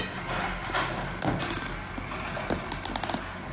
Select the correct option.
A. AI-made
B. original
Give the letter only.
B